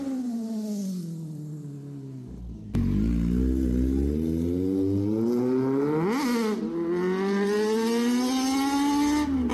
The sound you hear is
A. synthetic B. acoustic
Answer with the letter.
B